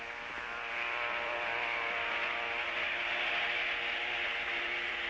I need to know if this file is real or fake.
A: real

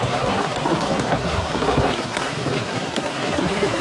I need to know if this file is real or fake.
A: fake